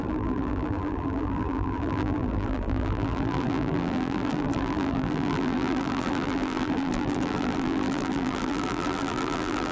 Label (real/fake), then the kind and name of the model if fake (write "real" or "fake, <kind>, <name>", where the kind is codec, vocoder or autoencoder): fake, vocoder, BigVGAN v2